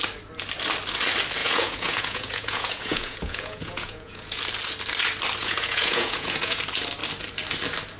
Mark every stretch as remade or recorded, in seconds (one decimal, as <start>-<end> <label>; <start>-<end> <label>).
0.0-1.4 recorded; 1.4-4.4 remade; 4.4-5.4 recorded; 5.4-6.6 remade; 6.6-8.0 recorded